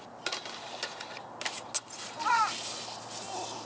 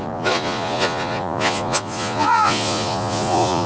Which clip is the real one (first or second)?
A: first